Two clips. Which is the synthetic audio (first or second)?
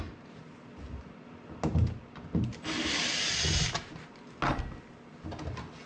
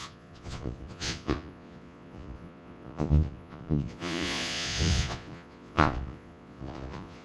second